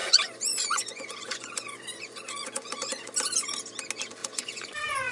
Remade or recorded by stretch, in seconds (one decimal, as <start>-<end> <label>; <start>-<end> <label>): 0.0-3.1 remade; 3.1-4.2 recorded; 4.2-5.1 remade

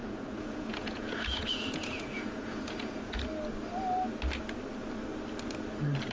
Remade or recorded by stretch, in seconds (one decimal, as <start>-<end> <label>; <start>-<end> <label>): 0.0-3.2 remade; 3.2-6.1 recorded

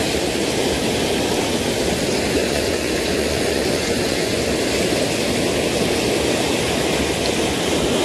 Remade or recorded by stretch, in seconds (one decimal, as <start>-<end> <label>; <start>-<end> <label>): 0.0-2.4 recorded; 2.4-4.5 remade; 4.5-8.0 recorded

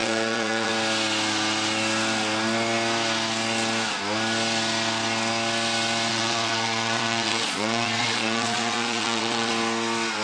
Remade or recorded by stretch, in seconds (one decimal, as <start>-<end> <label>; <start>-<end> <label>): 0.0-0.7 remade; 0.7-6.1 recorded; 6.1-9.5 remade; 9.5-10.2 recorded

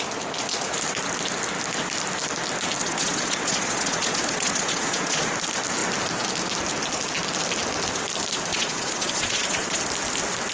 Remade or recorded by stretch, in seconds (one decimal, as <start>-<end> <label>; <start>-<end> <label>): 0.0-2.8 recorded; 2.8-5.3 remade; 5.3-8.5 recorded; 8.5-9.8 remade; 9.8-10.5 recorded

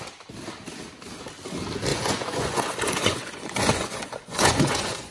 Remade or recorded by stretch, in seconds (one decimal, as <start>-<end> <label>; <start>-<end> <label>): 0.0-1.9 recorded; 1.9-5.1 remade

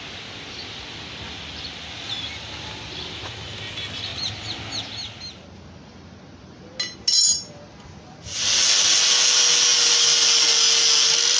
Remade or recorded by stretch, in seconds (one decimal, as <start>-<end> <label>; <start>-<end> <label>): 0.0-11.4 recorded

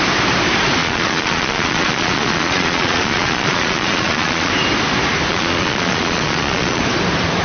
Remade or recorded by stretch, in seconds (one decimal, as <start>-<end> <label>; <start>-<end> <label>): 0.0-0.8 recorded; 0.8-4.5 remade; 4.5-5.3 recorded; 5.3-6.8 remade; 6.8-7.4 recorded